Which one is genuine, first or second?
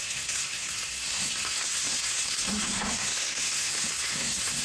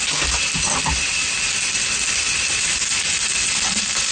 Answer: second